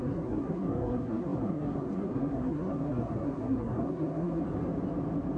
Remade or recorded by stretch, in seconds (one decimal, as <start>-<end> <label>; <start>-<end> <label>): 0.0-4.4 remade; 4.4-5.4 recorded